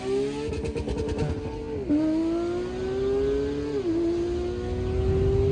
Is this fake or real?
real